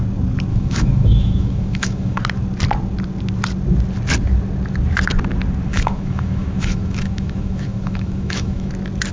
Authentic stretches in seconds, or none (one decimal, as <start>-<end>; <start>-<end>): 0.0-0.5; 2.2-5.7; 8.7-9.1